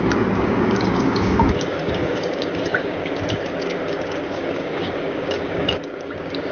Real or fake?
fake